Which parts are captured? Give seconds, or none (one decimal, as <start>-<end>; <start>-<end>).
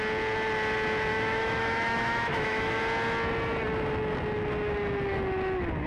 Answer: 0.0-1.1; 2.8-5.9